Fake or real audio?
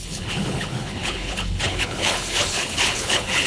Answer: fake